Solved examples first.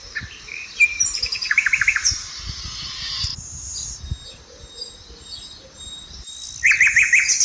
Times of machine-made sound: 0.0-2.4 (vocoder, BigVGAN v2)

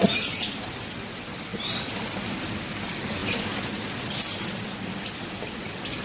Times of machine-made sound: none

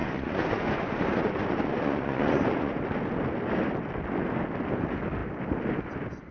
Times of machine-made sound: 0.0-2.7 (vocoder, Vocos)